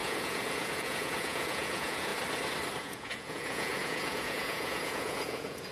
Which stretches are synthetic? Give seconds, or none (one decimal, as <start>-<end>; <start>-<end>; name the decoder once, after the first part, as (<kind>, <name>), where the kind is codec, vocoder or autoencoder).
0.0-2.1 (vocoder, Vocos); 2.8-5.7